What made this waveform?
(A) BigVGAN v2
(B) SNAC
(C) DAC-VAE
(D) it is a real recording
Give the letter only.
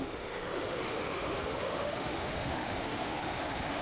C